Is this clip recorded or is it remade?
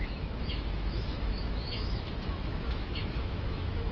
remade